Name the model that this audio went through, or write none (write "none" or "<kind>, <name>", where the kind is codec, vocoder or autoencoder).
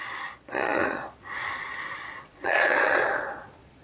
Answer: vocoder, Vocos